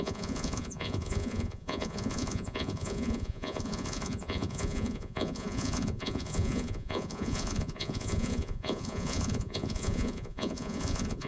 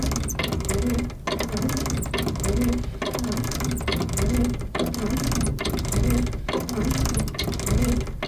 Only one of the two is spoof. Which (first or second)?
first